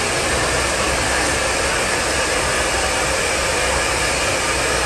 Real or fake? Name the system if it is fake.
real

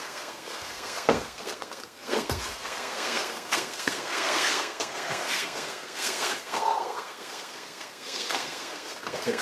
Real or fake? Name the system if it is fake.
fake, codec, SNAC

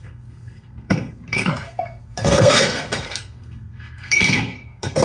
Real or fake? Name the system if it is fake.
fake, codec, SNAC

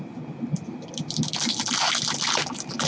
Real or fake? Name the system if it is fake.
real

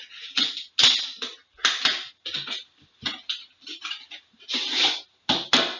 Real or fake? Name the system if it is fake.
real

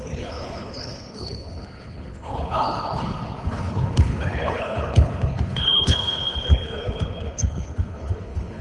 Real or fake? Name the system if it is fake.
fake, codec, HILCodec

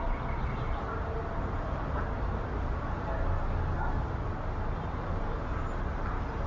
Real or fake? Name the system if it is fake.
real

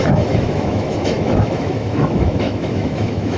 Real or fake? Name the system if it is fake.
fake, autoencoder, DAC-VAE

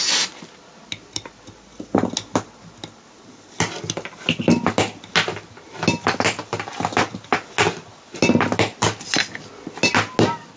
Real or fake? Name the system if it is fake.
real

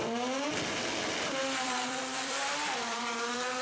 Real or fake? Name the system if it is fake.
fake, vocoder, BigVGAN v2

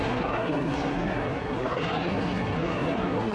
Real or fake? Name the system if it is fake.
fake, codec, SNAC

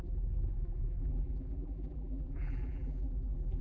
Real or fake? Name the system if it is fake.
fake, vocoder, BigVGAN v2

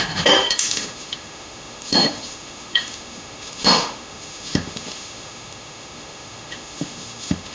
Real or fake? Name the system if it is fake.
fake, autoencoder, DAC-VAE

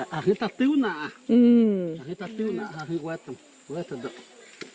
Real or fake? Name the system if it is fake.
real